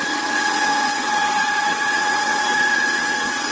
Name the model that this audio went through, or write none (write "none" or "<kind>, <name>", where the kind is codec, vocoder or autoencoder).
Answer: vocoder, WaveNeXt